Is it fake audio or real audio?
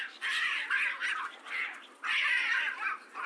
real